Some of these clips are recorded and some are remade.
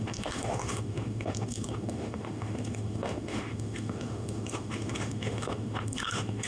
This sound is remade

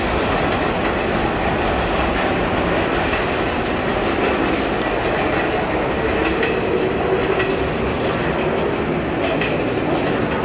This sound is recorded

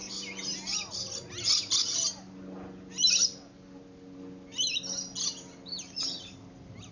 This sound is recorded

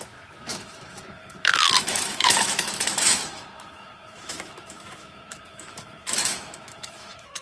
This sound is remade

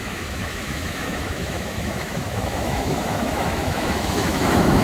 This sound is remade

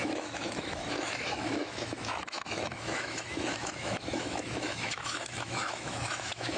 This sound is remade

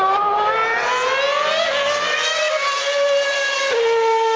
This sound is recorded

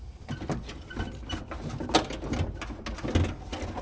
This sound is recorded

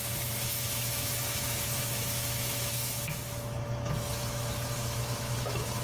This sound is remade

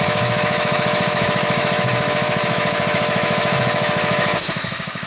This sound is remade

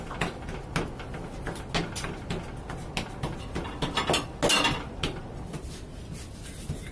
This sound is recorded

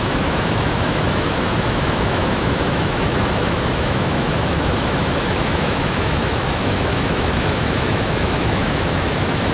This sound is remade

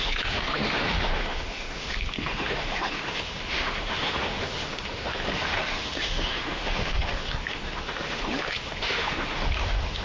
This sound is remade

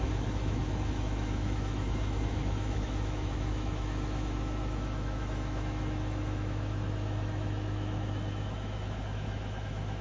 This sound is remade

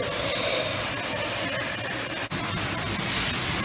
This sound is recorded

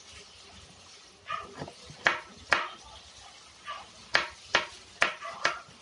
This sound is recorded